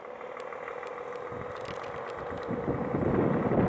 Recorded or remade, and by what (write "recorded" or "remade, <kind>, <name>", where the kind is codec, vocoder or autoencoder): recorded